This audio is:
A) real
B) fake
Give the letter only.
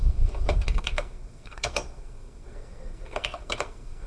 B